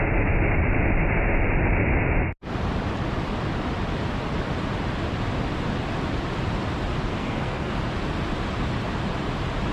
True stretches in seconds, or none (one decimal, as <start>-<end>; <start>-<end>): 0.0-7.1; 7.7-9.7